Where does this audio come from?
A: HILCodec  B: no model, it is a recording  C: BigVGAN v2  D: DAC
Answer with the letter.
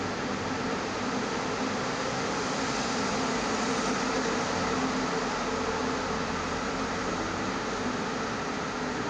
B